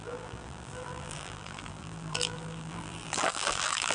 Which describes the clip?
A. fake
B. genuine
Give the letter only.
A